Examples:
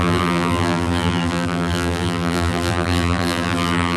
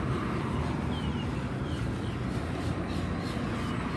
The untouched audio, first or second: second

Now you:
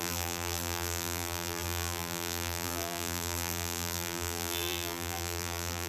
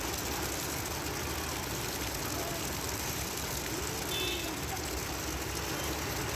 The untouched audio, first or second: second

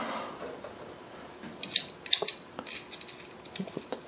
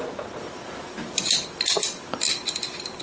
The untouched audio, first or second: first